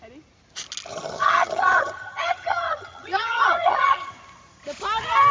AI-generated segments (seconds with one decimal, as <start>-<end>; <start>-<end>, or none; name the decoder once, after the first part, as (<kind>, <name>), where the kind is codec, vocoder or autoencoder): 0.9-4.1 (vocoder, HiFi-GAN)